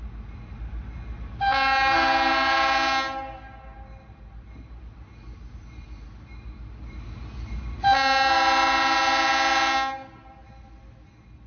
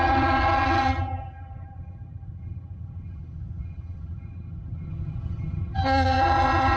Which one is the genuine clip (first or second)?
first